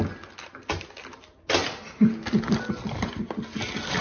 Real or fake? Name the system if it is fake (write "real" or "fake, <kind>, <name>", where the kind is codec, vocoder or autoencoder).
real